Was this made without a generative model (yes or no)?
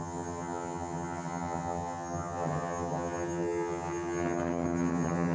no